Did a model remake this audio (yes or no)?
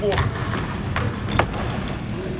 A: no